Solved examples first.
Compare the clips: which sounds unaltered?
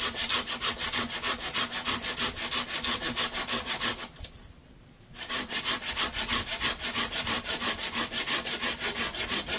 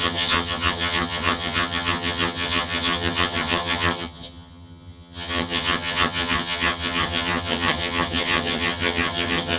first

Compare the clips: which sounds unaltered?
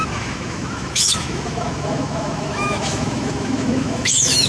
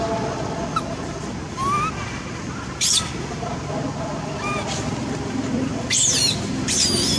second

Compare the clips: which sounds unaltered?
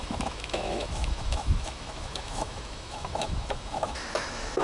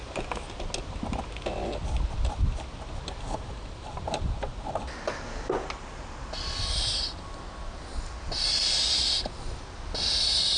second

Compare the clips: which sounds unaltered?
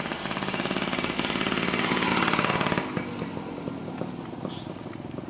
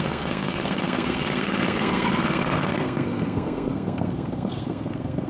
first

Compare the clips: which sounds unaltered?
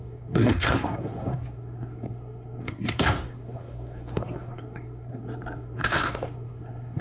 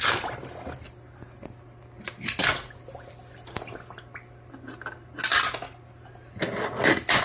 second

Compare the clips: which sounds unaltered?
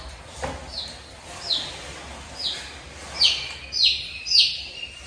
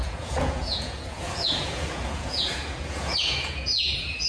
first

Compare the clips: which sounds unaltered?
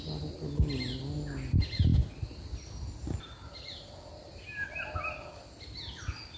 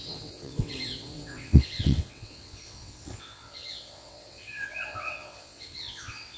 first